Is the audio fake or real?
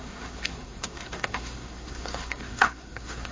fake